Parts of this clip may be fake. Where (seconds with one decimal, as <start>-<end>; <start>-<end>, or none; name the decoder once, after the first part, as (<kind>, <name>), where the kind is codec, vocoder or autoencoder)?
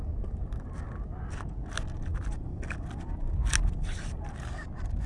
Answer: none